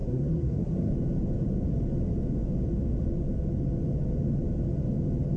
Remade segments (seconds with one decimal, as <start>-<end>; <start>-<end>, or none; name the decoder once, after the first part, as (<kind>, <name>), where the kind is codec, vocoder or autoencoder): 0.0-0.9 (codec, SNAC)